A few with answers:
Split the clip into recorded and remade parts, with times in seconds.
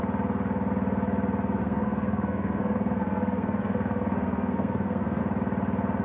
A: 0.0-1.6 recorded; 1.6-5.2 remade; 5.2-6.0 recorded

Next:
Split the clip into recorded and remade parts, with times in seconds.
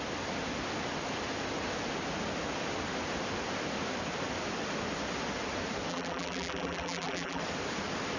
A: 0.0-5.9 recorded; 5.9-7.4 remade; 7.4-8.2 recorded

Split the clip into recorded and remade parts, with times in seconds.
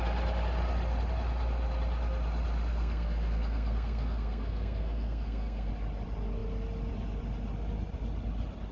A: 0.0-2.7 recorded; 2.7-5.7 remade; 5.7-8.7 recorded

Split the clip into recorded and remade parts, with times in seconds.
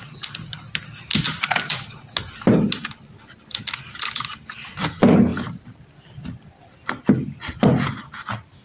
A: 0.0-8.6 recorded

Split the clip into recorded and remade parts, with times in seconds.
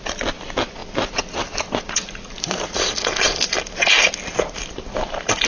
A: 0.0-5.5 recorded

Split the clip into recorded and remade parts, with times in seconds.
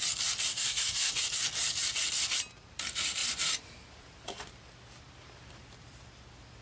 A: 0.0-0.5 recorded; 0.5-1.2 remade; 1.2-6.6 recorded